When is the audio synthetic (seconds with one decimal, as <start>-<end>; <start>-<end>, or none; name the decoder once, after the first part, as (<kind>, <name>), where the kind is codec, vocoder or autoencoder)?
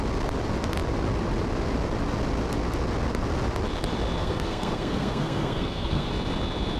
4.2-6.1 (codec, SNAC)